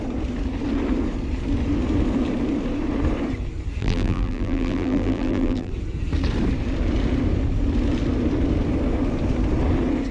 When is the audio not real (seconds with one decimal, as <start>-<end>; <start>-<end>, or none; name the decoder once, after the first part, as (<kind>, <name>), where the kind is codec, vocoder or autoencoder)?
3.8-5.7 (vocoder, BigVGAN v2)

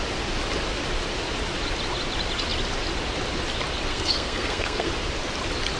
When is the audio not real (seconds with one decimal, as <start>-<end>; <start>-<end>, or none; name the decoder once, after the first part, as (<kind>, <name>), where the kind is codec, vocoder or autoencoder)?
3.9-4.9 (codec, SNAC)

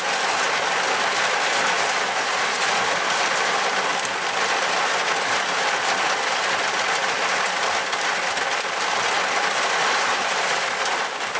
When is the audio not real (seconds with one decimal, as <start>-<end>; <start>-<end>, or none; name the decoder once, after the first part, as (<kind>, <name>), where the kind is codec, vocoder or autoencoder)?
none

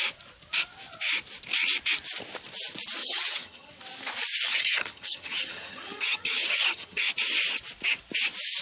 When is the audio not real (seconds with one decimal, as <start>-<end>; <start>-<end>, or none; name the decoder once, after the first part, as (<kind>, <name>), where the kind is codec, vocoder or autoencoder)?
3.0-3.7 (vocoder, HiFi-GAN); 4.5-7.1

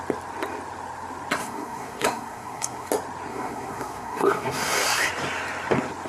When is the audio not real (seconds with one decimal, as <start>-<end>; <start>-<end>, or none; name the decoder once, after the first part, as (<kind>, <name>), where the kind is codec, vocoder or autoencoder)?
1.4-2.9 (codec, SNAC); 3.3-5.1

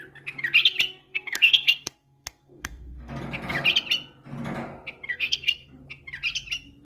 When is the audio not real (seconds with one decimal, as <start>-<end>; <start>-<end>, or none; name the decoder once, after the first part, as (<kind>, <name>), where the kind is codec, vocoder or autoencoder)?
1.0-3.2 (codec, SNAC); 5.1-5.8

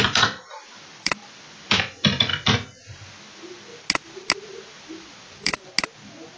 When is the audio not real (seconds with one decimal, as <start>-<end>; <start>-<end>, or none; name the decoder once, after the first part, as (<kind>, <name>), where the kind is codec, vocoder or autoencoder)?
0.0-2.3 (vocoder, BigVGAN v2); 3.2-3.7; 4.3-5.5